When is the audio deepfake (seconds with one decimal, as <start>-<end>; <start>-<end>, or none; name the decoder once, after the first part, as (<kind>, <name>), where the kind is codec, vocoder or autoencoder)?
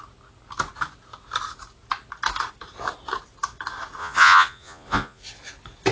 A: 4.0-5.2 (vocoder, Vocos)